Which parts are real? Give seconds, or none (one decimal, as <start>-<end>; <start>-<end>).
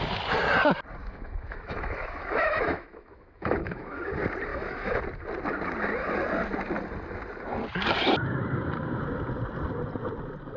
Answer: 0.0-1.0; 4.0-4.5; 5.0-10.6